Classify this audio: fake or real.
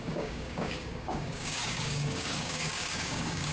fake